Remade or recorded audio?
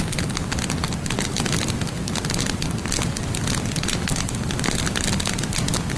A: recorded